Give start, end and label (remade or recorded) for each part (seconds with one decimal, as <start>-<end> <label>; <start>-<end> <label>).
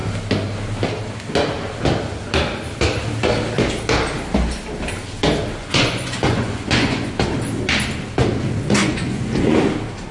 0.0-5.6 recorded; 5.6-7.1 remade; 7.1-8.8 recorded; 8.8-9.6 remade; 9.6-10.1 recorded